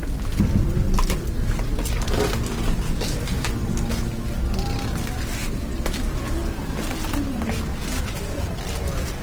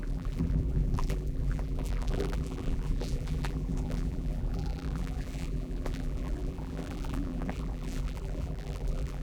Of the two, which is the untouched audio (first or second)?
first